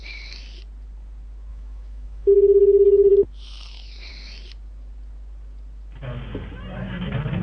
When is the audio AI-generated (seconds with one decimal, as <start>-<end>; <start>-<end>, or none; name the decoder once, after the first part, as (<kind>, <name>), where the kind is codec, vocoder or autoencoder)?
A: 1.5-2.3 (autoencoder, DAC-VAE)

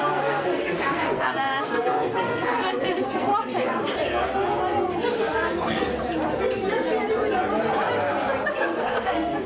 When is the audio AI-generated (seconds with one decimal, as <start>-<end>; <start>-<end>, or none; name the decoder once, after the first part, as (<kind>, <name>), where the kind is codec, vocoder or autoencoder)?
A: 0.0-3.3 (codec, SNAC); 5.2-5.9; 8.5-9.5

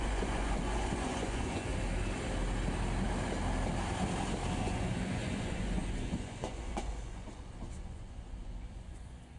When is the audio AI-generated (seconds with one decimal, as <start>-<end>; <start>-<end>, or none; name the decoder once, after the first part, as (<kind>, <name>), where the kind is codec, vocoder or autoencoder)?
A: 0.0-1.7 (vocoder, Vocos); 4.6-9.4

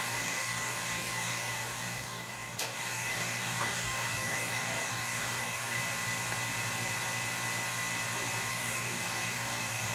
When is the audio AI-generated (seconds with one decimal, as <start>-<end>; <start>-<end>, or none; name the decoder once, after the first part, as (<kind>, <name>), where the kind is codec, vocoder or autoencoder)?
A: 0.0-5.8 (codec, DAC); 8.5-9.9

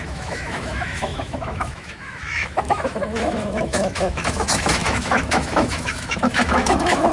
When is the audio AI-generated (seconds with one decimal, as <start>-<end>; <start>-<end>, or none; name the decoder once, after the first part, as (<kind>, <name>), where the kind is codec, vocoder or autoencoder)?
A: 0.0-7.1 (autoencoder, DAC-VAE)

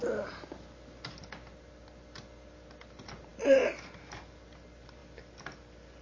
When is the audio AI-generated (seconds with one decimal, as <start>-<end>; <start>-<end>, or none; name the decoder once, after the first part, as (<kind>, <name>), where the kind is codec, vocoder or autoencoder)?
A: none